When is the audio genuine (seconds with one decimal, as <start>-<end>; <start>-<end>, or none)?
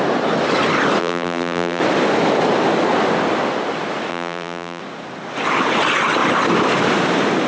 0.0-1.0; 1.8-4.1; 4.8-7.5